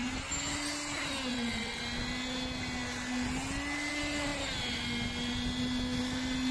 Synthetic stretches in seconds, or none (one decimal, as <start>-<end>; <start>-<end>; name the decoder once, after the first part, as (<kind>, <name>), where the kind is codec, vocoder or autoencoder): 1.3-1.8 (vocoder, WaveNeXt)